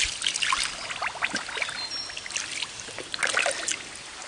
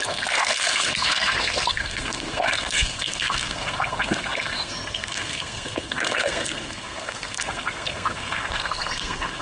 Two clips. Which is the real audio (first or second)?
first